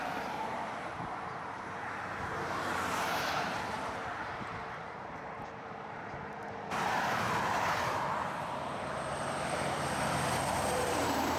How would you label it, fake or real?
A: fake